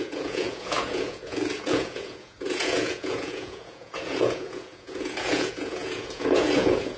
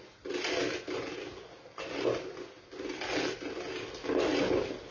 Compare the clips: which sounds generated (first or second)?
first